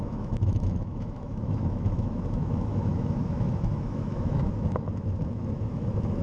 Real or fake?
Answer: fake